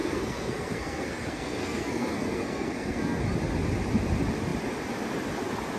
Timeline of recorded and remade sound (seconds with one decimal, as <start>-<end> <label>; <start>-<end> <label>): 0.0-3.2 remade; 3.2-5.8 recorded